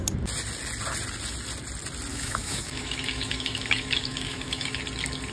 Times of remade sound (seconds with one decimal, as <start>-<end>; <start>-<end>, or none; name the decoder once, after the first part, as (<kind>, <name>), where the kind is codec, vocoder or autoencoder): 2.1-4.8 (autoencoder, DAC-VAE)